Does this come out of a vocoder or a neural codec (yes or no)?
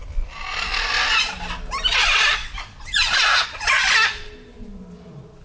no